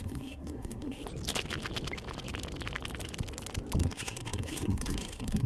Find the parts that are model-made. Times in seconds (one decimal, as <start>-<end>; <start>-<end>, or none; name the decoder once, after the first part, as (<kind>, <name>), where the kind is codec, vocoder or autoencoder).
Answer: 0.0-1.0 (codec, SNAC); 3.8-5.5